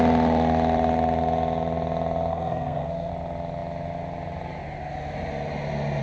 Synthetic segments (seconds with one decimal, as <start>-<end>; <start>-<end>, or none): 2.3-3.1